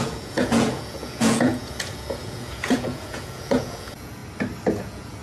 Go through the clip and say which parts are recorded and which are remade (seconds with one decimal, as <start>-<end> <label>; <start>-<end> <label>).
0.0-4.2 remade; 4.2-4.7 recorded; 4.7-5.2 remade